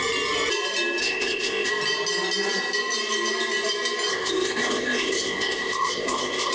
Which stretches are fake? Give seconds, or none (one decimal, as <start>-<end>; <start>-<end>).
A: 1.0-1.7; 4.1-6.5